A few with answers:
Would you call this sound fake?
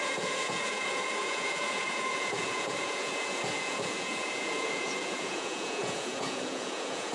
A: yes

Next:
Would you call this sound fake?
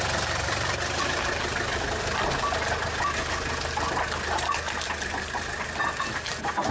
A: no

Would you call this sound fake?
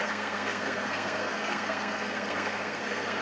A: yes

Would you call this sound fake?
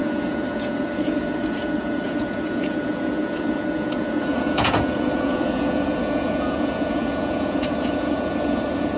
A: yes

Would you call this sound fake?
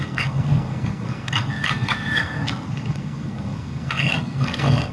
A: yes